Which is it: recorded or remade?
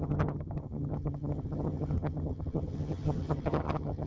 remade